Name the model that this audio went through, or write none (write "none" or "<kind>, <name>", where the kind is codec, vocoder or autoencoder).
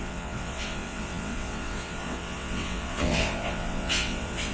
vocoder, WaveNeXt